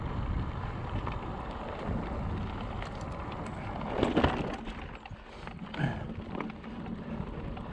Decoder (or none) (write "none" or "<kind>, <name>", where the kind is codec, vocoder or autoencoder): none